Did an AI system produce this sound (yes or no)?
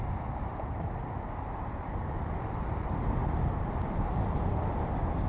yes